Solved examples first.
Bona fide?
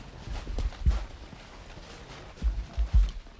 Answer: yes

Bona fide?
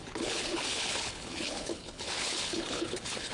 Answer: no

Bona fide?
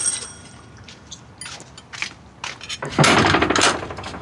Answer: yes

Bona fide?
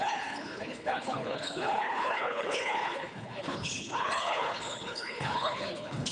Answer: no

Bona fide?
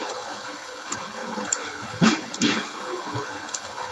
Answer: no